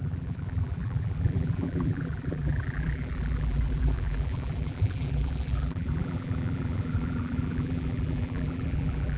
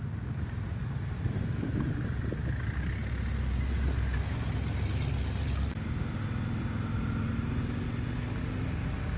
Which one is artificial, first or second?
first